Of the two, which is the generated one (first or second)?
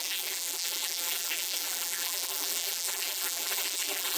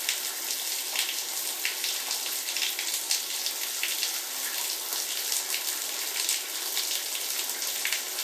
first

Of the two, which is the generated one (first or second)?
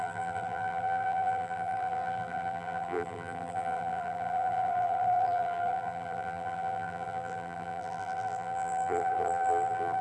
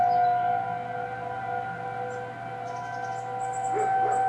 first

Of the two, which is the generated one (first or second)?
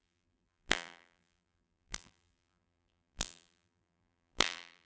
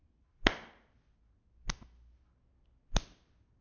first